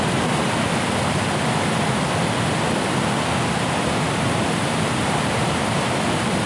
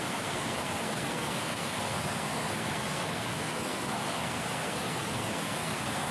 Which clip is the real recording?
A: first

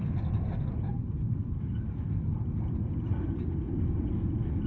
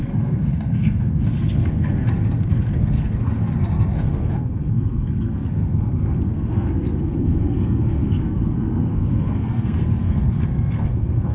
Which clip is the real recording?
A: first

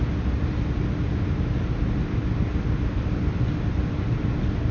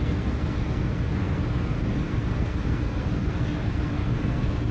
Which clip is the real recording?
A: first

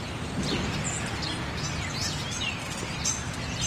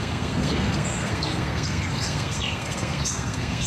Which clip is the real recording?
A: first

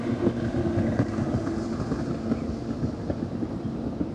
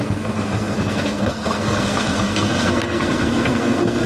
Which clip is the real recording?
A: first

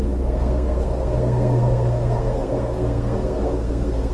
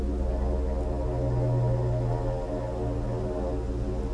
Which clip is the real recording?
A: second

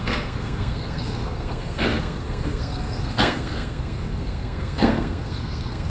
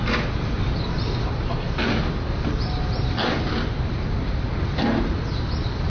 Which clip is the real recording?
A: second